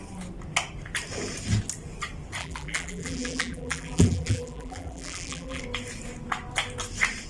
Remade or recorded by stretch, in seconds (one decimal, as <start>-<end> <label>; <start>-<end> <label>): 0.0-2.4 recorded; 2.4-5.6 remade; 5.6-7.3 recorded